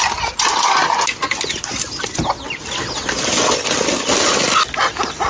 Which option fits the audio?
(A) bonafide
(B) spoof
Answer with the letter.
A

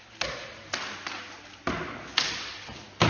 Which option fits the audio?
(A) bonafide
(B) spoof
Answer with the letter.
A